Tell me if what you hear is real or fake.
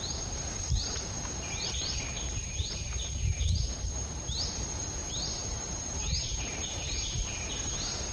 fake